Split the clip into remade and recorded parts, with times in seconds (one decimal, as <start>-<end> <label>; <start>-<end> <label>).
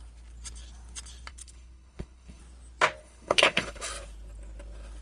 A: 0.0-1.3 recorded; 1.3-2.4 remade; 2.4-3.0 recorded; 3.0-3.9 remade; 3.9-5.0 recorded